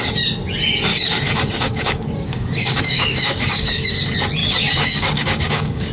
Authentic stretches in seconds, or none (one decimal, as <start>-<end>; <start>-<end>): 0.0-0.9; 3.9-4.4